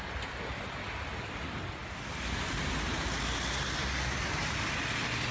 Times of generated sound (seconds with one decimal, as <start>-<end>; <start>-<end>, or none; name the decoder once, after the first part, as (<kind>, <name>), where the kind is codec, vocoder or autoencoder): none